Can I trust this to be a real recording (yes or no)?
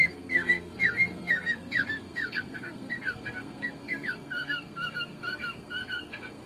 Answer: no